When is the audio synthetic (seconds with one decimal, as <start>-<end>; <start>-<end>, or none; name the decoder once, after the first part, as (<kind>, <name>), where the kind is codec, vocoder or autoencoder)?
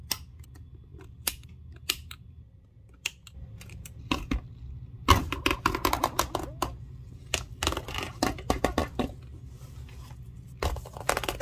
none